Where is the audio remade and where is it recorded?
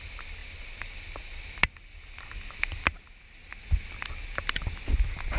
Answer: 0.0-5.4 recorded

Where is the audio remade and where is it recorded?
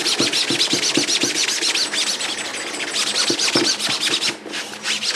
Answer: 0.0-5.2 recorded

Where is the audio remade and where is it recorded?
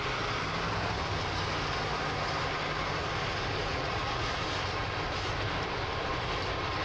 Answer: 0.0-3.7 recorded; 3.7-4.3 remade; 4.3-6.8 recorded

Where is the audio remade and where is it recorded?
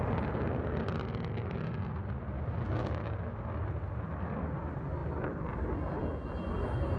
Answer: 0.0-7.0 recorded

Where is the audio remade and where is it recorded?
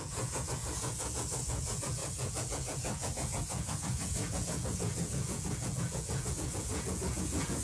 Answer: 0.0-7.6 remade